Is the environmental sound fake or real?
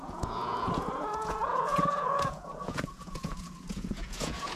fake